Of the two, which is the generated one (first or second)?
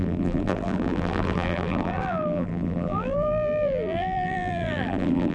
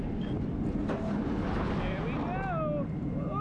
first